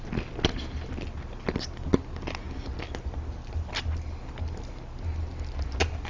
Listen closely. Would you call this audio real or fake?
real